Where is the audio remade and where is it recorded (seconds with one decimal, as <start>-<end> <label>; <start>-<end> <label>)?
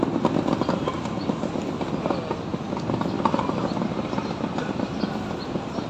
0.0-3.9 recorded; 3.9-5.0 remade; 5.0-5.9 recorded